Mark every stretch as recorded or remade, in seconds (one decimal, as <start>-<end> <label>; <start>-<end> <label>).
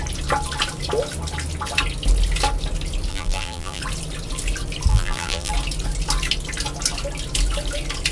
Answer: 0.0-3.1 recorded; 3.1-3.8 remade; 3.8-4.9 recorded; 4.9-5.5 remade; 5.5-8.1 recorded